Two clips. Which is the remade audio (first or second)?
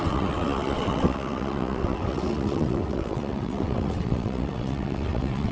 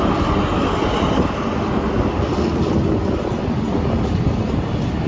first